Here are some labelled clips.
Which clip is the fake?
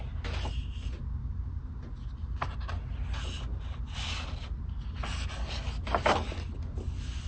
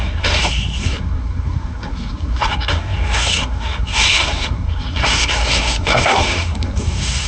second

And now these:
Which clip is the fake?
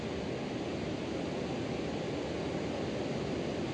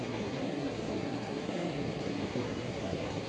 second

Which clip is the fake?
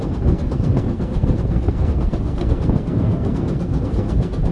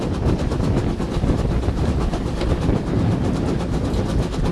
first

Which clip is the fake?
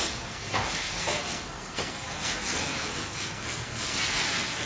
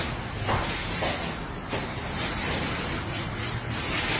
first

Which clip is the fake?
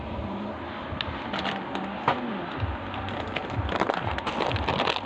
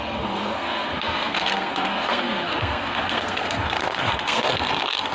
second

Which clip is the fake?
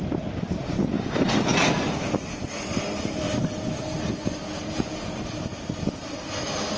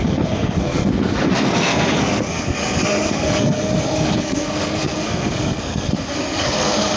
second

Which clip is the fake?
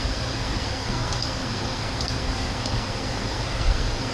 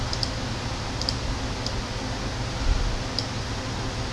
first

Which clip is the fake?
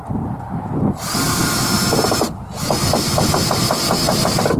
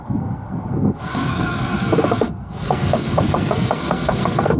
second